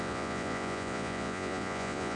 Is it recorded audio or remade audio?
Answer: remade